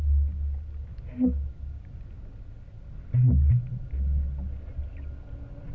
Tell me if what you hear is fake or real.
real